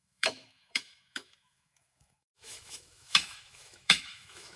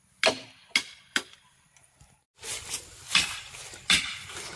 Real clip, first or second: second